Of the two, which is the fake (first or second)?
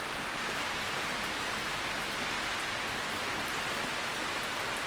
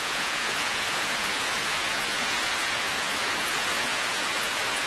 second